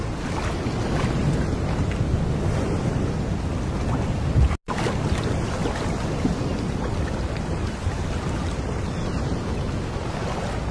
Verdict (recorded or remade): recorded